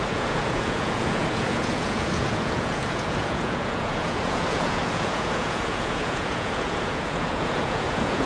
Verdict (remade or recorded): remade